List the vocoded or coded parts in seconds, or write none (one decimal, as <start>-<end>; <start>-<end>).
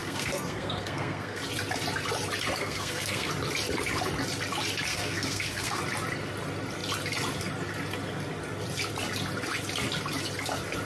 0.0-1.4; 2.6-3.3; 4.9-5.8